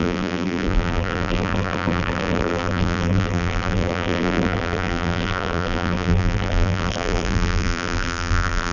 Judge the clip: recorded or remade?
remade